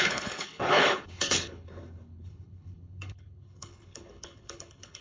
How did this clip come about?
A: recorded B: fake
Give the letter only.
B